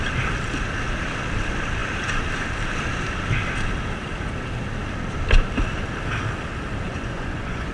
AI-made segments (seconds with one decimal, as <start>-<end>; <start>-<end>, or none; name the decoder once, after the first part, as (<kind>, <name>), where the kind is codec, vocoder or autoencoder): 6.9-7.7 (vocoder, Vocos)